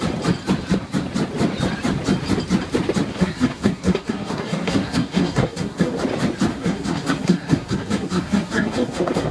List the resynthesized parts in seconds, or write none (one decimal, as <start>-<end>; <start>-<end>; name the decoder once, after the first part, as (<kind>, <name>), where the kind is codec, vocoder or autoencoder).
3.1-6.0 (codec, SNAC); 6.5-9.3